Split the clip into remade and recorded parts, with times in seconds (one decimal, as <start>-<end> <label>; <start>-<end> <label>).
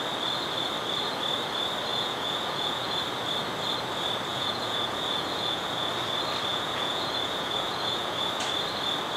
0.0-1.9 recorded; 1.9-3.0 remade; 3.0-4.3 recorded; 4.3-5.9 remade; 5.9-6.5 recorded; 6.5-8.3 remade; 8.3-9.2 recorded